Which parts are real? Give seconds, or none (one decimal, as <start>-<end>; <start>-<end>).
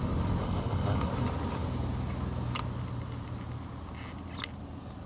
0.0-0.4; 1.1-5.1